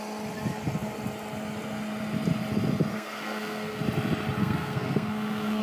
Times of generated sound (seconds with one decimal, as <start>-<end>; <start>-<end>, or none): 2.9-3.8; 4.4-5.6